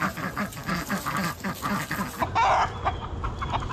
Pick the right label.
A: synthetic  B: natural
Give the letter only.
B